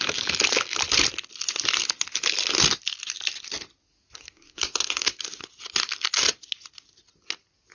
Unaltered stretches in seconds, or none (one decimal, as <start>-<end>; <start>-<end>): 0.0-4.2; 5.2-7.7